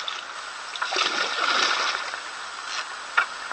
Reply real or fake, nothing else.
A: real